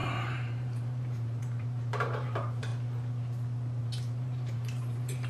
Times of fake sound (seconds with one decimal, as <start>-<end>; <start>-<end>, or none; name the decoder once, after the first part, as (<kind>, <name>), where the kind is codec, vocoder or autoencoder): 0.0-2.7 (vocoder, BigVGAN v2); 3.8-5.3